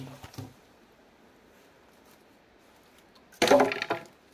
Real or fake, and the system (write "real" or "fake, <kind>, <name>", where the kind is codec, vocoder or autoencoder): real